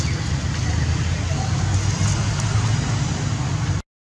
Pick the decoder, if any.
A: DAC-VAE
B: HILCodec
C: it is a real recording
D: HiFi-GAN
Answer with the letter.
C